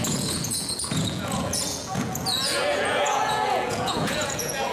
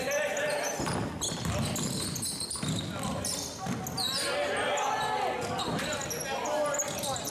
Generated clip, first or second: first